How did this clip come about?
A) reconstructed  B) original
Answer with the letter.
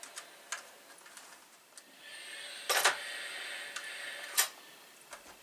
B